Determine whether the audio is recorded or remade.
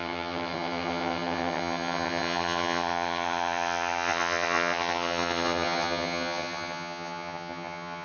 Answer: remade